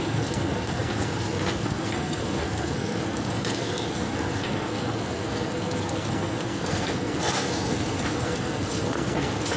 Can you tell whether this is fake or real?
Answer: fake